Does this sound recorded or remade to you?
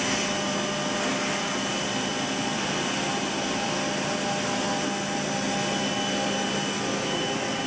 recorded